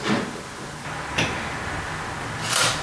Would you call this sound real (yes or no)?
yes